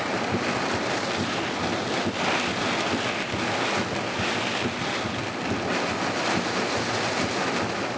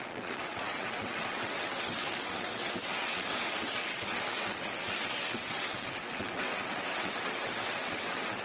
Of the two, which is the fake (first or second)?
second